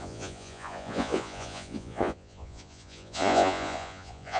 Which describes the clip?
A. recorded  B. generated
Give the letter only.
B